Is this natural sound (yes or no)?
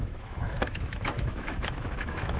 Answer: no